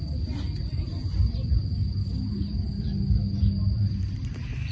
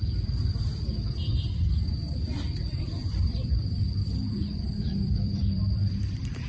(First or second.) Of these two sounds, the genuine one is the first